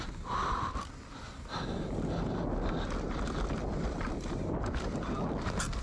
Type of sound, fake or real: real